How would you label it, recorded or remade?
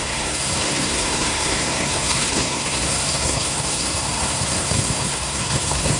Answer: remade